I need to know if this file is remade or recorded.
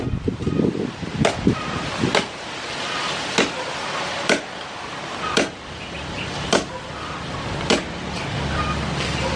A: recorded